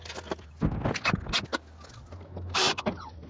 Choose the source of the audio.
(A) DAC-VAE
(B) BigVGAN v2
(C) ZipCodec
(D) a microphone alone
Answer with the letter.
D